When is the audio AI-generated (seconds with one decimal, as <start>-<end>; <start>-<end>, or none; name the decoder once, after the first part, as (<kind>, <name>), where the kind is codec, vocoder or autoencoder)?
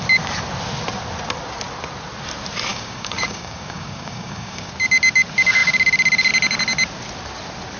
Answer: 2.7-4.7 (codec, DAC)